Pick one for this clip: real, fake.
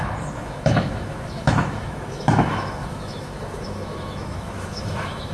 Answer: fake